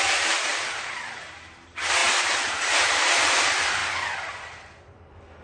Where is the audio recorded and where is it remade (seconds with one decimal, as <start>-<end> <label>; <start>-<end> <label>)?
0.0-0.5 remade; 0.5-1.2 recorded; 1.2-3.8 remade; 3.8-5.4 recorded